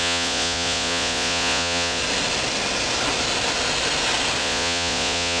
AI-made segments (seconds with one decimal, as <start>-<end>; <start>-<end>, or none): 0.0-2.0; 4.4-5.4